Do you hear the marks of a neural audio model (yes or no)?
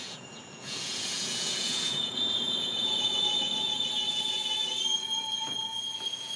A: yes